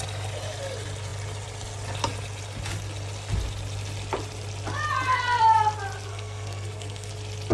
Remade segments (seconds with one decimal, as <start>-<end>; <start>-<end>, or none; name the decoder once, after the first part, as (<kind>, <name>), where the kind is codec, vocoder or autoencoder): 6.1-7.1 (codec, SNAC)